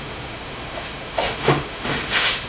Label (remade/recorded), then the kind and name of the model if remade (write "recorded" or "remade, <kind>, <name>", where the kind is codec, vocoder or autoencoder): remade, autoencoder, DAC-VAE